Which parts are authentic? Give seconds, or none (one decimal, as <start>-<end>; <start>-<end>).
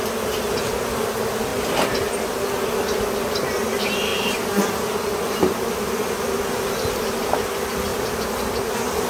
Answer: 0.0-4.1; 5.7-9.1